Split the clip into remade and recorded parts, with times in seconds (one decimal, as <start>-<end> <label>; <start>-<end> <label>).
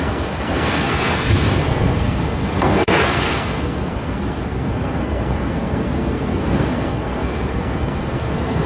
0.0-8.7 remade